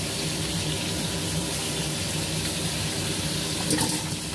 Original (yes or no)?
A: yes